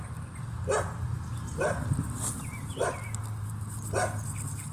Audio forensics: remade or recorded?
recorded